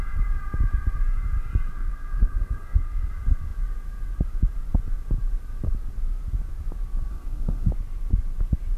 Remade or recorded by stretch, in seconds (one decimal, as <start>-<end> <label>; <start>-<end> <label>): 0.0-1.7 recorded; 1.7-3.1 remade; 3.1-7.1 recorded; 7.1-7.7 remade; 7.7-8.8 recorded